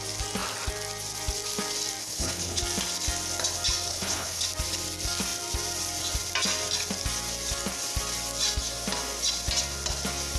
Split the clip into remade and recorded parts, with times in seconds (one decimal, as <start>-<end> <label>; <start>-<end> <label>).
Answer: 0.0-2.0 recorded; 2.0-2.6 remade; 2.6-3.9 recorded; 3.9-4.4 remade; 4.4-10.4 recorded